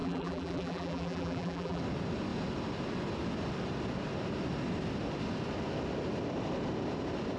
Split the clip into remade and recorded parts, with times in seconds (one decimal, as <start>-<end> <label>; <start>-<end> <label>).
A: 0.0-1.8 remade; 1.8-7.4 recorded